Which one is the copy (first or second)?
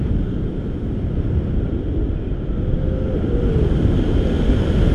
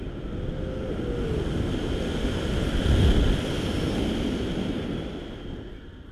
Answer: first